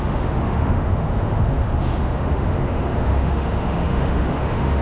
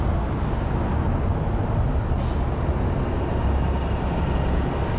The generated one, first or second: first